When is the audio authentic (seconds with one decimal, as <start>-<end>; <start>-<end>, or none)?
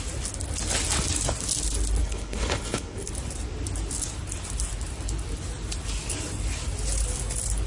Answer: 0.0-2.0; 3.1-7.7